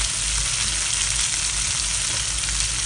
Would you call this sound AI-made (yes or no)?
no